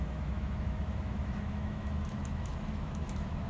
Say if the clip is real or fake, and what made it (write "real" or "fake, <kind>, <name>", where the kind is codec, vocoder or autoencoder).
fake, autoencoder, DAC-VAE